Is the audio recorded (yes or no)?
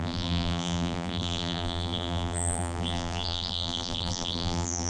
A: no